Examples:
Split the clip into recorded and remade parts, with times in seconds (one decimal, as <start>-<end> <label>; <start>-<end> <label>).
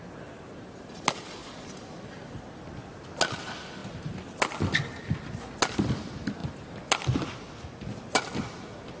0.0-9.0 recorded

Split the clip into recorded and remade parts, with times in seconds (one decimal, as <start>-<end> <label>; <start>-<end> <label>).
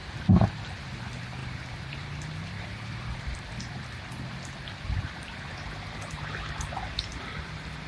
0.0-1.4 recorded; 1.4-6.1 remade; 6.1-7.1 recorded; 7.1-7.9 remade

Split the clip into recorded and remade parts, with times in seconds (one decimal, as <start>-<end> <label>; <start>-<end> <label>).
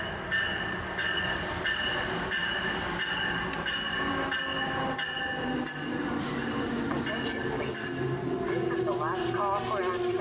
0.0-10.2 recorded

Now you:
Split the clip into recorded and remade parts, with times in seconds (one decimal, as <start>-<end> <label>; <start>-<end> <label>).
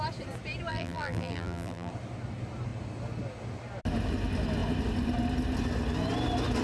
0.0-0.7 recorded; 0.7-1.9 remade; 1.9-6.6 recorded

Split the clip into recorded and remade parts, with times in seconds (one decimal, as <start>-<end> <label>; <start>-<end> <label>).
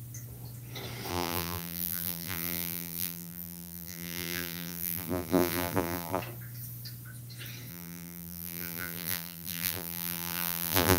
0.0-1.1 recorded; 1.1-6.2 remade; 6.2-7.7 recorded; 7.7-11.0 remade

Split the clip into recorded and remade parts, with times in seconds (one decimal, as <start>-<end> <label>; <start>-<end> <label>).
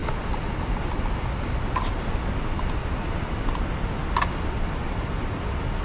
0.0-0.5 remade; 0.5-2.8 recorded; 2.8-3.4 remade; 3.4-5.8 recorded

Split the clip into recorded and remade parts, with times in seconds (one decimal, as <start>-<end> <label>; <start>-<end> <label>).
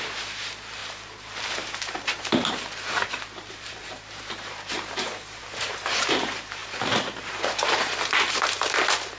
0.0-9.2 remade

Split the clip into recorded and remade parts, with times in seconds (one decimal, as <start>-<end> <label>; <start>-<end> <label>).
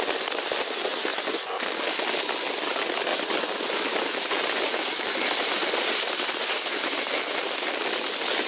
0.0-3.1 recorded; 3.1-7.1 remade; 7.1-8.5 recorded